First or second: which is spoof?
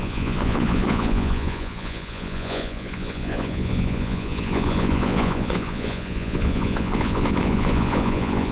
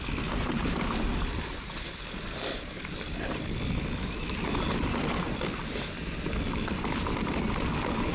first